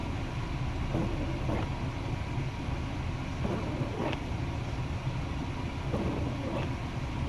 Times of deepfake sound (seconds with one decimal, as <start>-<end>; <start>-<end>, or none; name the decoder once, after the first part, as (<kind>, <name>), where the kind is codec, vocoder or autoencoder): none